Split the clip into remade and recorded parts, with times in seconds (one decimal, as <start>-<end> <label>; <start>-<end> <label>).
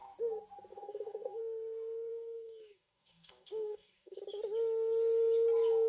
0.0-0.7 recorded; 0.7-1.4 remade; 1.4-2.1 recorded; 2.1-4.2 remade; 4.2-5.9 recorded